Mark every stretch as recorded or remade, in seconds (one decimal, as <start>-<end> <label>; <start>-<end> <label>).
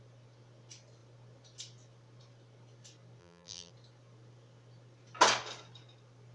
0.0-3.2 recorded; 3.2-3.7 remade; 3.7-6.3 recorded